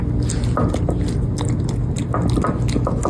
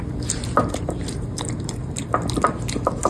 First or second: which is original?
first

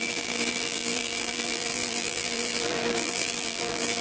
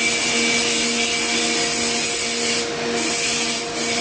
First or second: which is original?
second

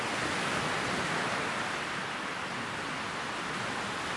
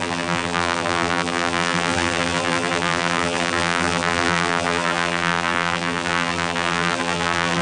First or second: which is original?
first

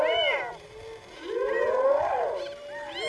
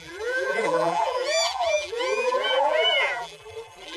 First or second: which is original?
first